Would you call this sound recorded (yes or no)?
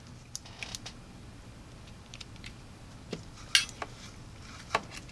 yes